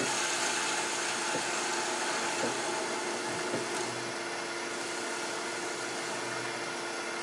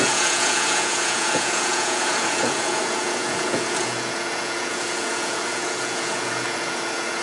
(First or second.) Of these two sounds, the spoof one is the second